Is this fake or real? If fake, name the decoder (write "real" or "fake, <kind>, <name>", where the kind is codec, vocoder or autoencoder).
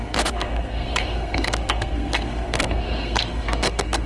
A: fake, codec, SNAC